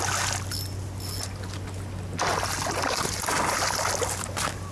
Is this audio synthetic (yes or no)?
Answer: no